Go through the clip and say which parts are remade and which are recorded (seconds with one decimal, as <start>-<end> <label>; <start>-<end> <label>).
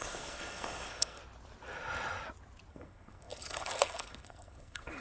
0.0-1.2 remade; 1.2-2.7 recorded; 2.7-5.0 remade